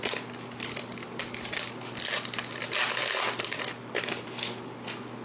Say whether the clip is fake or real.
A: real